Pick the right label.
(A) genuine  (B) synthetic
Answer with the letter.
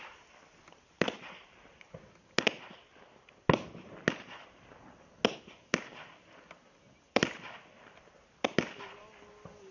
A